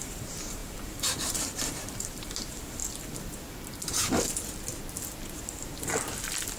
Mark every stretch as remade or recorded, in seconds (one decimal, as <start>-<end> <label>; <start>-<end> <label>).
0.0-2.8 remade; 2.8-3.5 recorded; 3.5-4.0 remade; 4.0-6.6 recorded